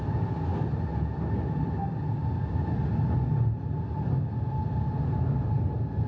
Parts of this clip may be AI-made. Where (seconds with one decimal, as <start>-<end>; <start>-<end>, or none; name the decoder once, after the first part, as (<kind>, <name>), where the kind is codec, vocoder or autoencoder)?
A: none